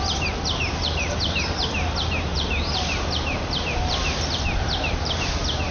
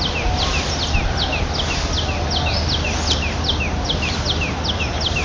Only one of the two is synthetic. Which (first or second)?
first